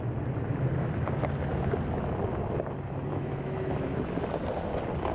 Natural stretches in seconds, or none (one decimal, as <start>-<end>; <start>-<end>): 0.0-3.1; 4.0-5.1